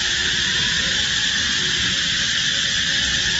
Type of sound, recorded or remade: recorded